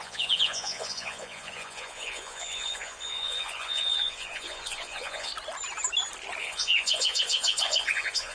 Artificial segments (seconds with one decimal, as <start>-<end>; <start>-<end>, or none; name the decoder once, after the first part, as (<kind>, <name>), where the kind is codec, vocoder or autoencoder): 0.0-5.3 (vocoder, Vocos); 6.4-8.3